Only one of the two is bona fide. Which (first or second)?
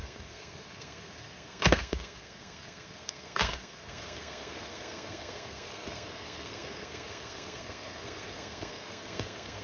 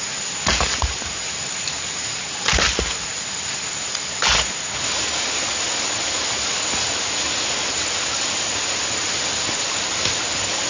second